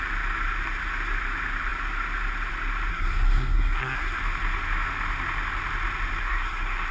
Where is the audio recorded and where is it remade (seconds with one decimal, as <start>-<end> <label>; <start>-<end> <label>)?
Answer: 0.0-2.9 recorded; 2.9-4.2 remade; 4.2-6.2 recorded; 6.2-6.9 remade